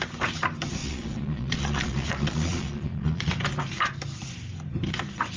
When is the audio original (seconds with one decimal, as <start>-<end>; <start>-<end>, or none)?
0.0-0.8; 3.3-5.4